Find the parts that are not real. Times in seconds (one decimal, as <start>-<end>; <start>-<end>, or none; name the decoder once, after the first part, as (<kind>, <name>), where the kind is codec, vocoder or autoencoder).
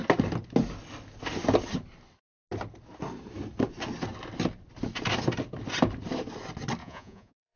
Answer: 6.8-7.6 (vocoder, Vocos)